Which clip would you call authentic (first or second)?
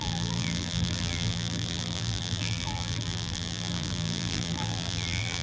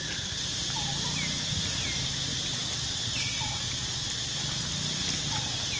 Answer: second